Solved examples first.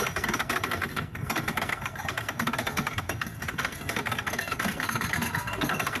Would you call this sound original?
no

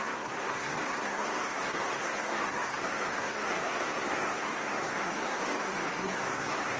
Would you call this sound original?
no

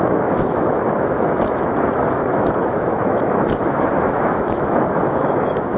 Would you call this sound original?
no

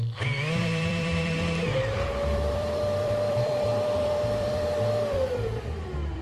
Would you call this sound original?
no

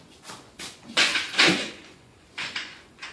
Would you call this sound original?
no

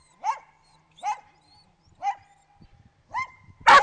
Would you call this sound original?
no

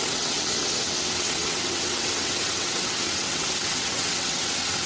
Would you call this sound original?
no